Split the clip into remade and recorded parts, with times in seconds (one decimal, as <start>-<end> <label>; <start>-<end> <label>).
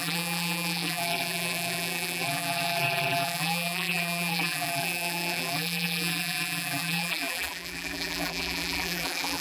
0.0-9.4 remade